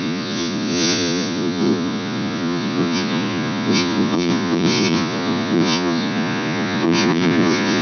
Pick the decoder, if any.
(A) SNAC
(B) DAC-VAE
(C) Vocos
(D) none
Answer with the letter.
C